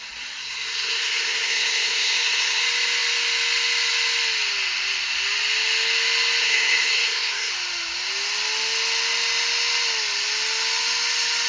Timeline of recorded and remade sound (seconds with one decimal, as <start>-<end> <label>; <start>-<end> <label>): 0.0-0.4 recorded; 0.4-2.6 remade; 2.6-6.4 recorded; 6.4-7.5 remade; 7.5-11.5 recorded

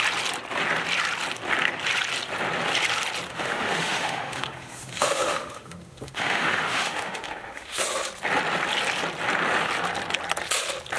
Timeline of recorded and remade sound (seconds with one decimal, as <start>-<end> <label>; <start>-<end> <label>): 0.0-3.3 recorded; 3.3-7.8 remade; 7.8-11.0 recorded

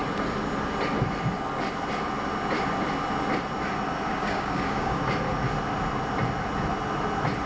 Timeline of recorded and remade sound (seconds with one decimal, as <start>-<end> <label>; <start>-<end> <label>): 0.0-4.1 recorded; 4.1-5.0 remade; 5.0-7.5 recorded